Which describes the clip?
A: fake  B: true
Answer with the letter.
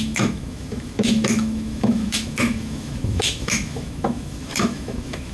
A